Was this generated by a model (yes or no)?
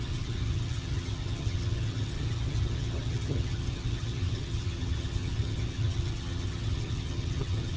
yes